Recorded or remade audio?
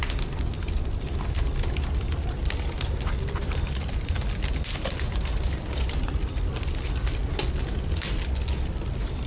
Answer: recorded